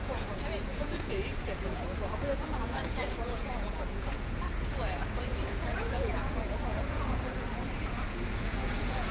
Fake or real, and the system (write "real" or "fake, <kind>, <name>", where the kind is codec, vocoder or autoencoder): fake, vocoder, Vocos